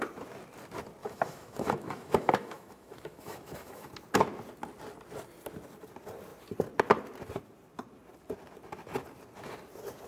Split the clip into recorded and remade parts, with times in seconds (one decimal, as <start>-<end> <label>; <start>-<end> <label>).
0.0-1.0 recorded; 1.0-3.9 remade; 3.9-10.1 recorded